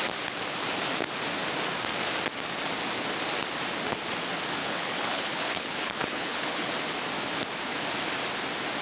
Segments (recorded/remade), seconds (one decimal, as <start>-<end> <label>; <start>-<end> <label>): 0.0-4.6 recorded; 4.6-6.7 remade; 6.7-8.8 recorded

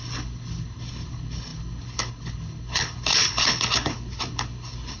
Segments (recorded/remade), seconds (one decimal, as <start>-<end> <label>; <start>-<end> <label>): 0.0-5.0 remade

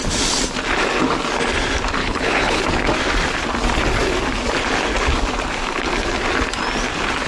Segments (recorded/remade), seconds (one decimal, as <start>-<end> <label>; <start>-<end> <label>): 0.0-2.0 recorded; 2.0-2.6 remade; 2.6-7.3 recorded

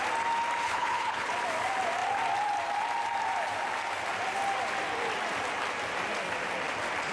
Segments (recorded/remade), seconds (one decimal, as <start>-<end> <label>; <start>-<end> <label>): 0.0-0.6 recorded; 0.6-1.3 remade; 1.3-7.1 recorded

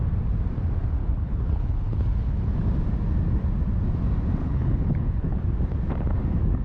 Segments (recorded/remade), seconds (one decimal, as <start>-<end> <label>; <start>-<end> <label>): 0.0-1.0 recorded; 1.0-2.5 remade; 2.5-4.4 recorded; 4.4-5.4 remade; 5.4-6.6 recorded

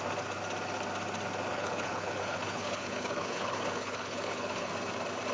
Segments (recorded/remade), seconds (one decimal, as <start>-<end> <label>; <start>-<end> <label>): 0.0-1.5 recorded; 1.5-4.7 remade; 4.7-5.3 recorded

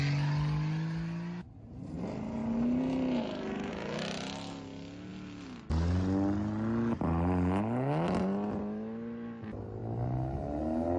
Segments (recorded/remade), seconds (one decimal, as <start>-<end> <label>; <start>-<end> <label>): 0.0-11.0 recorded